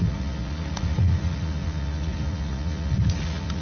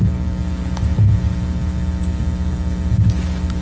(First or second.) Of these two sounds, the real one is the second